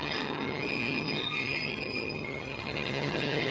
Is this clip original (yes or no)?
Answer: no